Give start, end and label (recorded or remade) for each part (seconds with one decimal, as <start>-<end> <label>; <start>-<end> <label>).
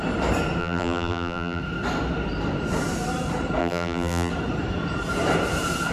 0.0-0.6 recorded; 0.6-1.6 remade; 1.6-3.6 recorded; 3.6-4.3 remade; 4.3-5.9 recorded